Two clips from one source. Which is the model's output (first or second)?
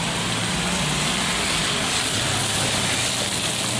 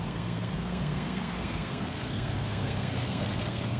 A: second